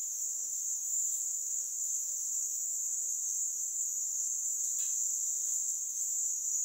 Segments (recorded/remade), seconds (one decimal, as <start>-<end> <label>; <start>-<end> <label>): 0.0-4.6 remade; 4.6-5.6 recorded; 5.6-6.6 remade